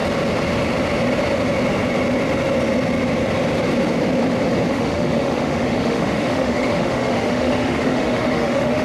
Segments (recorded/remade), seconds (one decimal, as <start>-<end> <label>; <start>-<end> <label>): 0.0-4.7 recorded; 4.7-8.8 remade